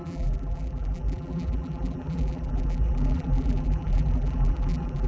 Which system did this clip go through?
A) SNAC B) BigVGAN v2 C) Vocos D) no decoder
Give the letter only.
B